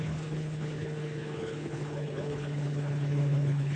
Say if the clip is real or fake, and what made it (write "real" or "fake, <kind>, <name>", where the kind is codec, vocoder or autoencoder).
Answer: fake, codec, HILCodec